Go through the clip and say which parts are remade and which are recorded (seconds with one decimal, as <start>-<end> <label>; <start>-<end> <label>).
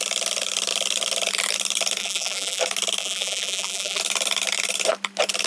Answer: 0.0-2.0 recorded; 2.0-2.6 remade; 2.6-3.0 recorded; 3.0-4.0 remade; 4.0-5.5 recorded